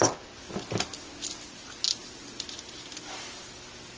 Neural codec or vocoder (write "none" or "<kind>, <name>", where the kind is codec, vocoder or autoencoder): none